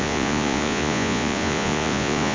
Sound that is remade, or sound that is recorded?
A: remade